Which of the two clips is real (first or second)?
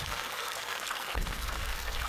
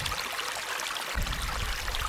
second